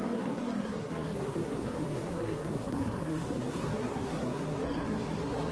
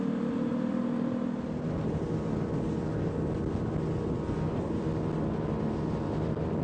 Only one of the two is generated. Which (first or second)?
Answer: first